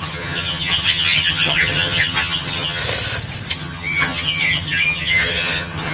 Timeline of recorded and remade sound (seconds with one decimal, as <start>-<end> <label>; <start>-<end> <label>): 0.0-2.8 remade; 2.8-3.5 recorded; 3.5-5.9 remade